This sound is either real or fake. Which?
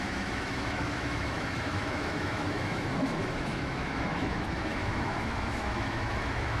fake